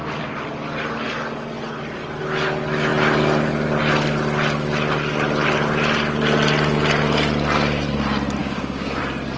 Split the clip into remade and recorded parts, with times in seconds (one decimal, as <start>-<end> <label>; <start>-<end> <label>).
0.0-8.4 recorded; 8.4-9.0 remade; 9.0-9.4 recorded

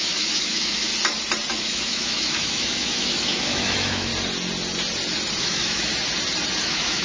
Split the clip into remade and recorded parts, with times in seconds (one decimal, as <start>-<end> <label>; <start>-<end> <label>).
0.0-0.9 remade; 0.9-1.5 recorded; 1.5-4.1 remade; 4.1-5.4 recorded; 5.4-5.9 remade; 5.9-6.6 recorded; 6.6-7.0 remade